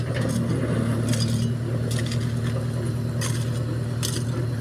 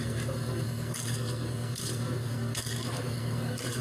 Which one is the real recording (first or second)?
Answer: first